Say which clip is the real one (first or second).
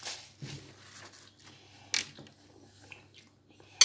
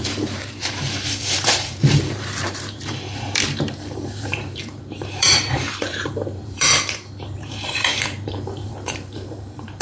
first